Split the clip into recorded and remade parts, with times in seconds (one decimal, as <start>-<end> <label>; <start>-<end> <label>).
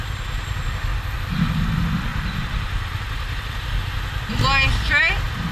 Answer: 0.0-2.1 recorded; 2.1-3.4 remade; 3.4-5.5 recorded